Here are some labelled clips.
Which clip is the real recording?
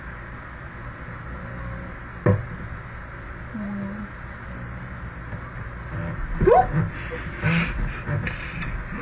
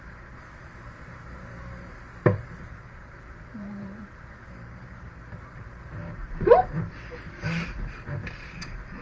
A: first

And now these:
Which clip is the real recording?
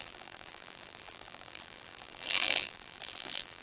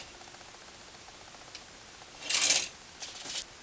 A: second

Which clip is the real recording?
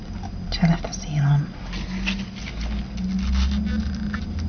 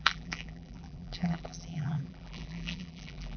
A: first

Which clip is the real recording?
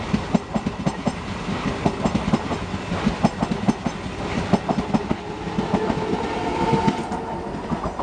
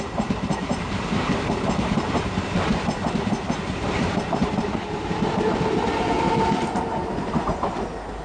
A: first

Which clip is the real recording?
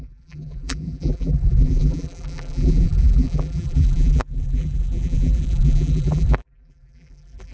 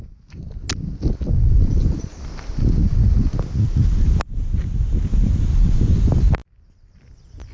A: second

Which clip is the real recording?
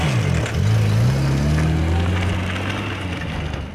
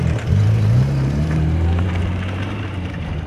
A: first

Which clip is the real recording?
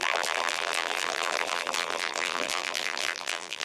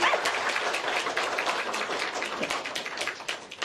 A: second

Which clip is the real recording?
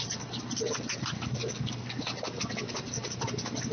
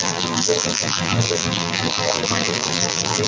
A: first